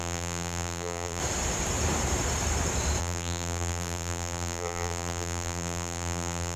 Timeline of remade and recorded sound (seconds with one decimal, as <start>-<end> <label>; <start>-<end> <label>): 0.0-1.2 remade; 1.2-3.0 recorded; 3.0-6.6 remade